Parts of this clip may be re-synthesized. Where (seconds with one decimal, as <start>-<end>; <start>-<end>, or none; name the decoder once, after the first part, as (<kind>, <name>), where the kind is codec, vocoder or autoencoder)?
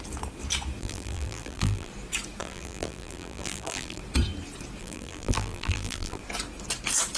0.8-1.9 (vocoder, BigVGAN v2); 2.4-4.0; 4.8-6.2